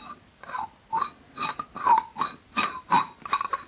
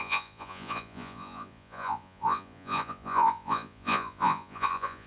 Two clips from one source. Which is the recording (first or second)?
first